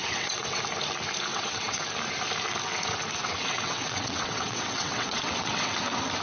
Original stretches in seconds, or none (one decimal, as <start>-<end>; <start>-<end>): 0.6-1.3; 1.8-3.2; 5.8-6.2